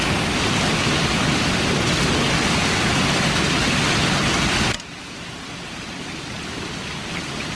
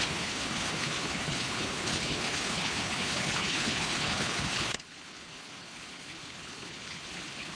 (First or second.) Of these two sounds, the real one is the first